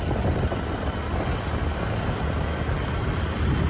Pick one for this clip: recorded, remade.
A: recorded